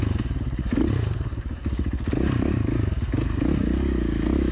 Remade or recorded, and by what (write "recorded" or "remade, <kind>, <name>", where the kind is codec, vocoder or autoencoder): recorded